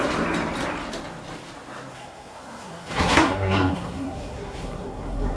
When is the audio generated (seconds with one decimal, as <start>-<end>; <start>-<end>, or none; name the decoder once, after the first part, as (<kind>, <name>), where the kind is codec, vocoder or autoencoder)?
1.9-5.4 (codec, SNAC)